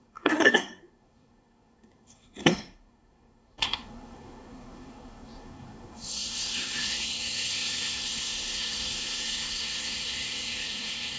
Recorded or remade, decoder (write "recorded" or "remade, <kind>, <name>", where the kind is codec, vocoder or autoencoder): remade, codec, SNAC